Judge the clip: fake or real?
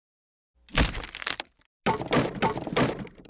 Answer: real